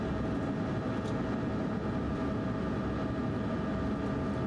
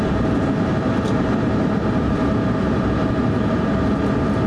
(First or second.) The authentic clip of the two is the first